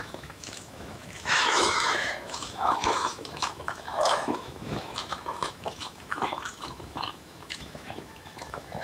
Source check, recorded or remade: remade